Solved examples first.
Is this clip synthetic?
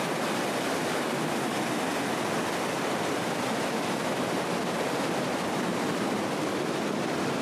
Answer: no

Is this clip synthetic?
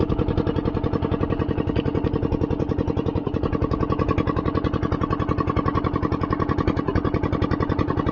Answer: no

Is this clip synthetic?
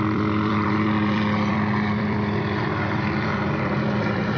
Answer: yes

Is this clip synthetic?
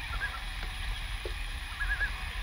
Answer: no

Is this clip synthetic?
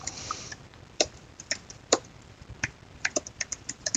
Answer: yes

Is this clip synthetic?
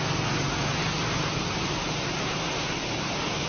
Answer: no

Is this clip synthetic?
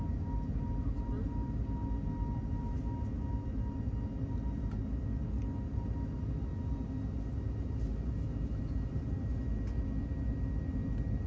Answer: no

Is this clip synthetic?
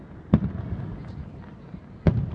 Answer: no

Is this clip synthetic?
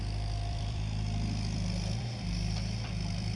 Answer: yes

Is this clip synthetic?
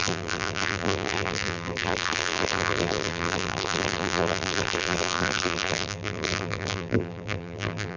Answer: yes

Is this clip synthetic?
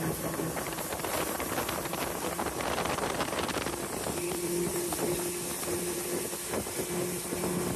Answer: no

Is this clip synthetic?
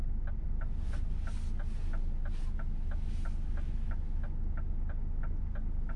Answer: no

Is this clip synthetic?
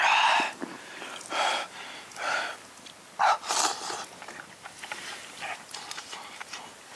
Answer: no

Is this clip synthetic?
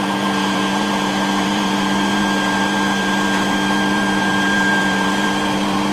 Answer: yes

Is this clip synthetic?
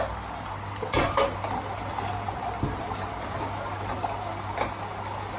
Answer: no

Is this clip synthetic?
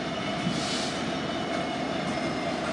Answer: no